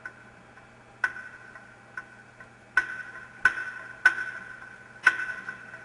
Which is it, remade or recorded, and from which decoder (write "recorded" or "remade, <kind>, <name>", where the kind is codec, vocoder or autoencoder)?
recorded